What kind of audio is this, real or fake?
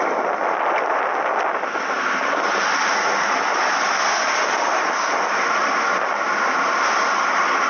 real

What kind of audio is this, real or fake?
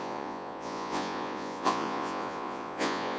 fake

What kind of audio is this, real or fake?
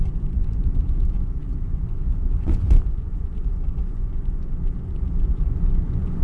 fake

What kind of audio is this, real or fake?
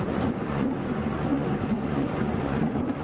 fake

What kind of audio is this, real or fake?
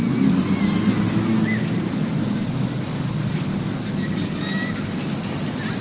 real